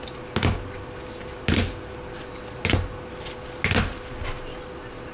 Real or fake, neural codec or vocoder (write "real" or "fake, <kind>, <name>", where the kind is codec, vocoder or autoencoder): real